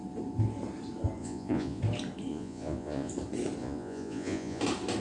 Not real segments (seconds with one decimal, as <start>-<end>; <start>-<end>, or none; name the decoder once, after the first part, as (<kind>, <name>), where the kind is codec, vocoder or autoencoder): 1.2-1.8 (vocoder, Vocos); 2.3-3.1; 3.6-4.6